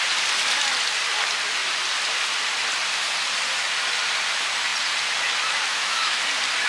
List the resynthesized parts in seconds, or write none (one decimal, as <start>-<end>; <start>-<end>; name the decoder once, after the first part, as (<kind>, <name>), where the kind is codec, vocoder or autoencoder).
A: 5.7-6.2 (autoencoder, DAC-VAE)